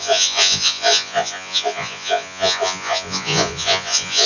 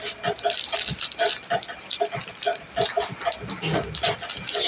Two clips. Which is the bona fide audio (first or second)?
second